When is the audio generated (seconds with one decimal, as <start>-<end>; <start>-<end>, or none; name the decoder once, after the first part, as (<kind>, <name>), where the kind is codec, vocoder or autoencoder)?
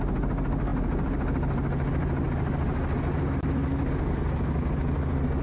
none